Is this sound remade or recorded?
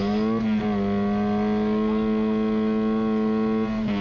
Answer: recorded